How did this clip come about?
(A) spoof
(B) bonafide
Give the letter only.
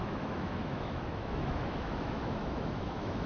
A